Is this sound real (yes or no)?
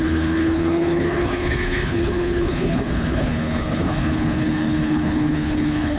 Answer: no